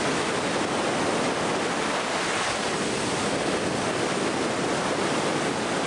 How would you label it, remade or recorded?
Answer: recorded